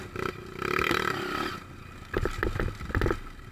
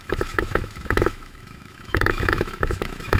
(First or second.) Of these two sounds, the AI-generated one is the second